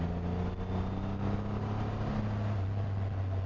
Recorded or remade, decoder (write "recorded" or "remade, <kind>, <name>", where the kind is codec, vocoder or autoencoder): recorded